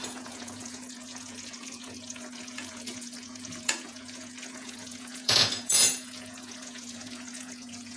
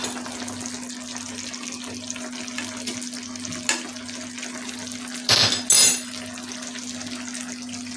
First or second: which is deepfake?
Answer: first